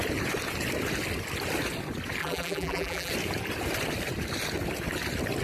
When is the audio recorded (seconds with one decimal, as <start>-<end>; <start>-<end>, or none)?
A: 0.0-2.2; 3.1-5.4